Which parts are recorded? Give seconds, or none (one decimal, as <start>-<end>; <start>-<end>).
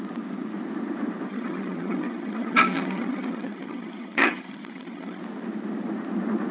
0.0-1.3; 5.2-6.5